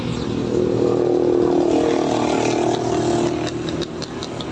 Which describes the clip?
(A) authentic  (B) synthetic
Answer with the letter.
A